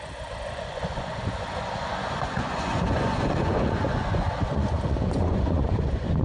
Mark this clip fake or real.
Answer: fake